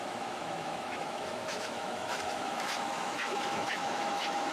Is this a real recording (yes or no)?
no